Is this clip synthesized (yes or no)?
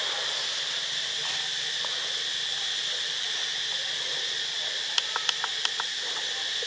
no